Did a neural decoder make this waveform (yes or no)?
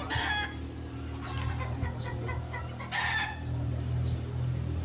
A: no